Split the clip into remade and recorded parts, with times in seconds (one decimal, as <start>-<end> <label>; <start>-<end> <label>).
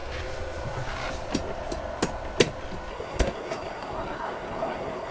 0.0-2.9 recorded; 2.9-5.1 remade